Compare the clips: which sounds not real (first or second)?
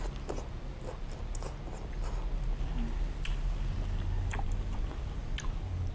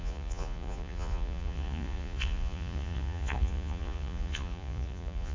second